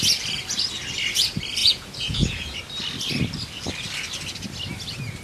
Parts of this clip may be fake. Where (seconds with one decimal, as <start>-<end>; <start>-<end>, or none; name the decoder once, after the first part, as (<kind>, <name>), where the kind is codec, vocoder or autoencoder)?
1.6-2.6 (vocoder, Vocos)